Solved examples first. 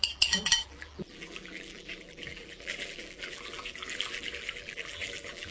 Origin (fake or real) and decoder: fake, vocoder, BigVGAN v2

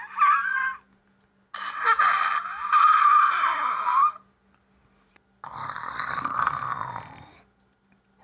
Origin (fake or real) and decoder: real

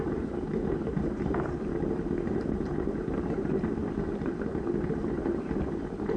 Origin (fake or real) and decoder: fake, vocoder, BigVGAN v2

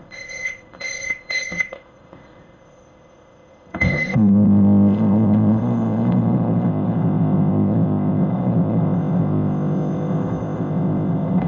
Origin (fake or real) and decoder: fake, codec, ZipCodec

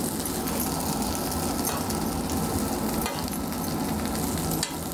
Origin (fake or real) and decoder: real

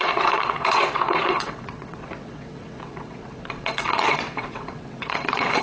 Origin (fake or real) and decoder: fake, vocoder, WaveNeXt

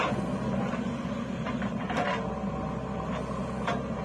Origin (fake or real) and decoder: real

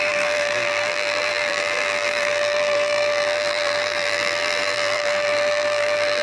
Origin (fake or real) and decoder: fake, vocoder, BigVGAN v2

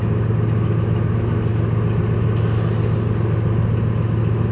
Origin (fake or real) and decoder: real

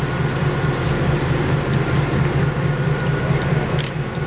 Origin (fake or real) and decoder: real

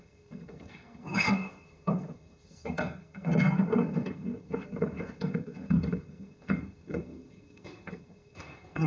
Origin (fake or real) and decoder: fake, codec, SNAC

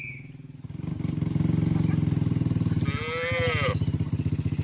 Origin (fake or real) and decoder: real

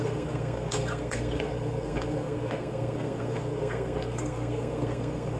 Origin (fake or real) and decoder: fake, codec, SNAC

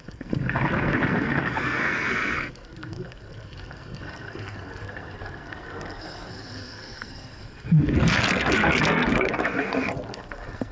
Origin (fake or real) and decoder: fake, codec, SNAC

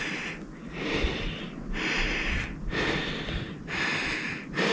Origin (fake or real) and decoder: real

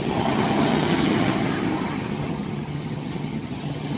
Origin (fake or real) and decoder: fake, vocoder, HiFi-GAN